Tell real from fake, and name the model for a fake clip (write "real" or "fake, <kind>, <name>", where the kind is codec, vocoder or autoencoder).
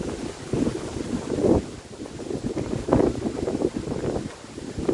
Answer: real